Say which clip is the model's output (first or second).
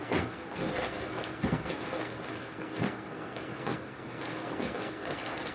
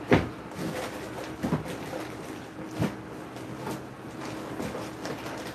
first